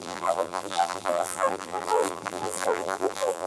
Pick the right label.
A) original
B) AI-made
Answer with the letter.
B